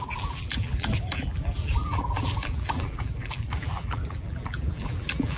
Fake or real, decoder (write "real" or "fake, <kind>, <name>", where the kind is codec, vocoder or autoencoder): fake, vocoder, BigVGAN v2